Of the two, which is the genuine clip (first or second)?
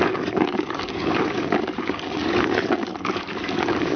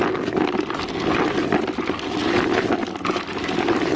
second